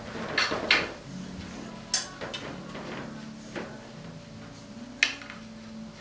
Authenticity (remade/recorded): recorded